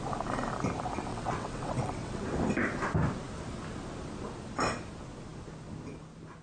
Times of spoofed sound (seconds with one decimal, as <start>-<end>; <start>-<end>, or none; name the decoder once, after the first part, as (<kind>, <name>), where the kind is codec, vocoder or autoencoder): 1.1-2.2 (vocoder, WaveNeXt)